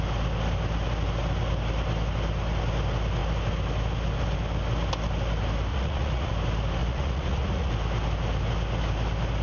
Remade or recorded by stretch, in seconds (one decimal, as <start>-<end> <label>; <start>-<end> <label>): 0.0-5.7 recorded; 5.7-6.3 remade; 6.3-6.8 recorded; 6.8-7.7 remade; 7.7-9.4 recorded